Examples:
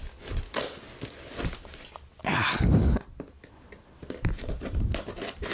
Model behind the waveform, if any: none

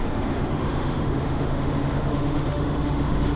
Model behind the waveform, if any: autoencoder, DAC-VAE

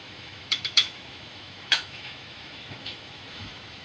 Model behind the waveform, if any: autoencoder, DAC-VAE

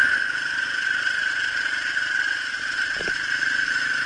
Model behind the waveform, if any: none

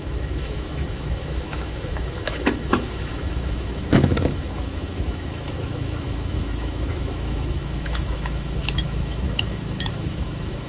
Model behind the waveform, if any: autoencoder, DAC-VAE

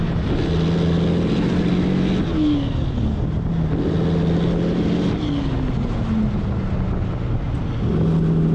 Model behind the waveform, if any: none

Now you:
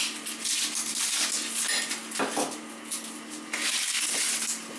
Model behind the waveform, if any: none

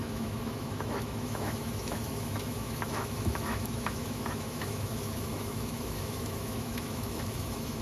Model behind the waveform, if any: autoencoder, DAC-VAE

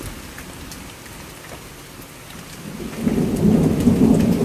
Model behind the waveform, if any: none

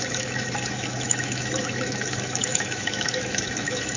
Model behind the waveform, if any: autoencoder, DAC-VAE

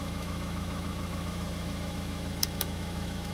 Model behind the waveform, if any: autoencoder, DAC-VAE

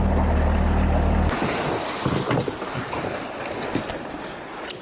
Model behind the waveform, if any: none